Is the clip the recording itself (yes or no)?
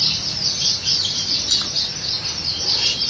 yes